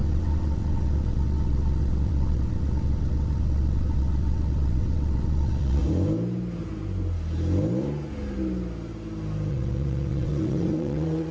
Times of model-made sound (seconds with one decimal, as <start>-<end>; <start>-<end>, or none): 0.0-5.8; 9.5-11.3